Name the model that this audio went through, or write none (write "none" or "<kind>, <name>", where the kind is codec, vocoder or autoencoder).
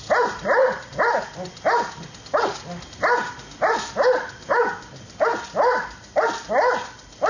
none